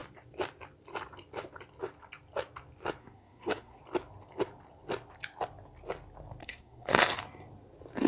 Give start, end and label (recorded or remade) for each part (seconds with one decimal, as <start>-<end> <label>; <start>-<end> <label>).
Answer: 0.0-3.0 recorded; 3.0-3.8 remade; 3.8-6.4 recorded; 6.4-7.0 remade; 7.0-8.1 recorded